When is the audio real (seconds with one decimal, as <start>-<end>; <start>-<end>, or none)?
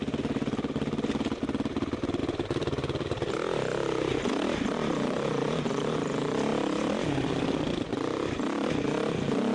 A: 0.0-2.2; 3.3-9.5